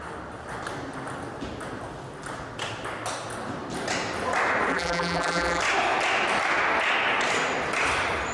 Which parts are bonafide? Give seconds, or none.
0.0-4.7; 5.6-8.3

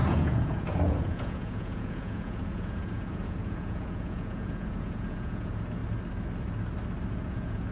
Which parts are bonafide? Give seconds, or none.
5.8-7.1

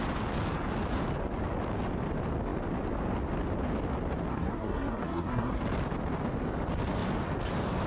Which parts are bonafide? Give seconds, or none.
0.0-4.3; 5.6-7.9

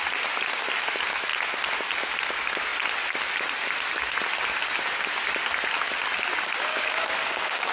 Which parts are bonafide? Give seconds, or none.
0.0-6.7

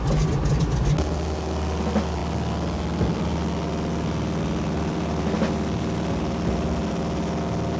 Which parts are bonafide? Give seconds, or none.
0.0-7.8

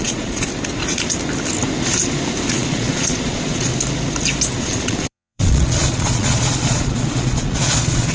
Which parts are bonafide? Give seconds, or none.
0.5-2.5; 3.7-4.6

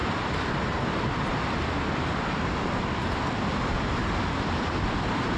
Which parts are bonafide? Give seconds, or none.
0.0-5.4